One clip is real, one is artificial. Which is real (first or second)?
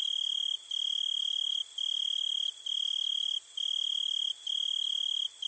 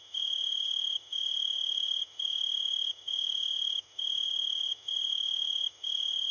first